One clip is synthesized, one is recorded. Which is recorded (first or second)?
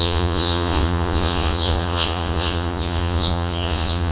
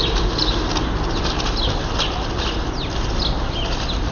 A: second